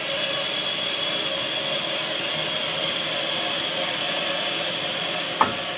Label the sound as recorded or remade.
recorded